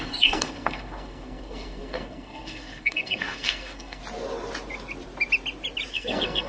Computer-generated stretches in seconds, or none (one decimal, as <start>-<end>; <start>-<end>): 0.0-4.0; 5.9-6.5